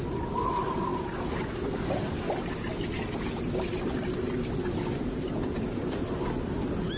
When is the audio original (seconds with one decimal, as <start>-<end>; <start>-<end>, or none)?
0.0-7.0